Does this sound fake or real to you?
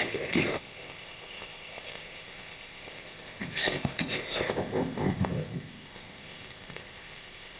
fake